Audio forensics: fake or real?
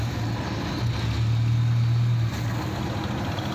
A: real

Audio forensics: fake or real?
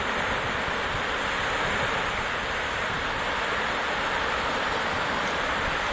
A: fake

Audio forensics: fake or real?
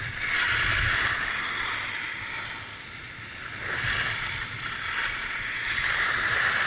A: real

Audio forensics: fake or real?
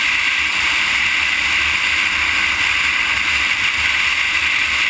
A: fake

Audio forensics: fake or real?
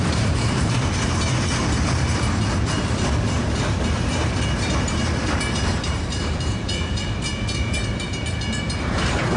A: fake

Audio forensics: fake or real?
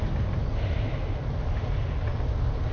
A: real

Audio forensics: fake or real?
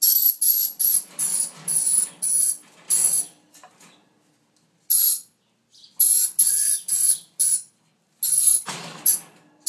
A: real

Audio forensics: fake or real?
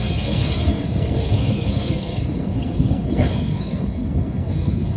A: fake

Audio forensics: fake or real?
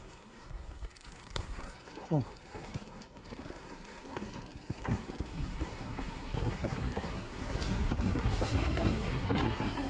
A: fake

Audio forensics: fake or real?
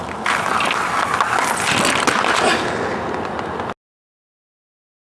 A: real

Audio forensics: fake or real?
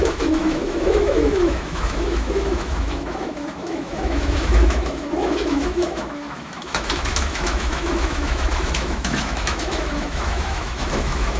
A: fake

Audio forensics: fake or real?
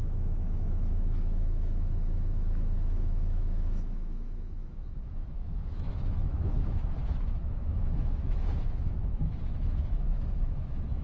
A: fake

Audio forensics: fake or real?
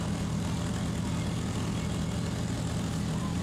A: real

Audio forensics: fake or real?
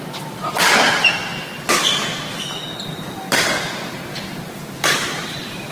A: real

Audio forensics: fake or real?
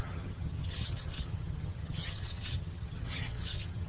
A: fake